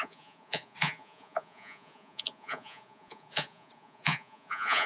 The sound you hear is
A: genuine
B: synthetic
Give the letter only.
B